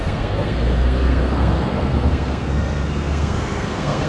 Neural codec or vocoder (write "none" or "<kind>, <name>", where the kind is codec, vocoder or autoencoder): codec, SNAC